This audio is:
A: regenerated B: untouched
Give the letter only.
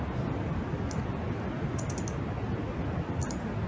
B